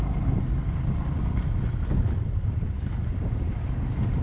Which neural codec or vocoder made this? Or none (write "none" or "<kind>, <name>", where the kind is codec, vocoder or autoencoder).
none